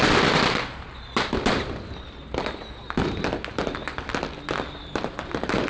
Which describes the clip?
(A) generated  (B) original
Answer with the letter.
B